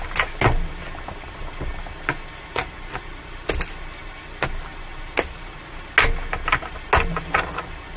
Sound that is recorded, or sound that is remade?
recorded